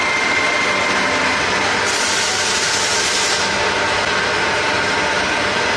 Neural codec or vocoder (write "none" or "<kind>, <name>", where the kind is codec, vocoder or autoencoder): none